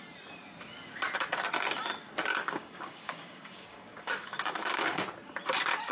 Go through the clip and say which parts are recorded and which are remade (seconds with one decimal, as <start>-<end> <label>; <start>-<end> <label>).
0.0-2.3 recorded; 2.3-5.0 remade; 5.0-5.9 recorded